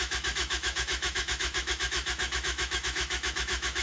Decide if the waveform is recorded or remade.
remade